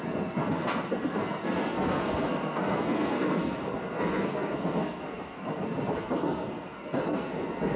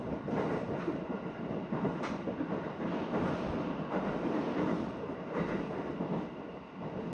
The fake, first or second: first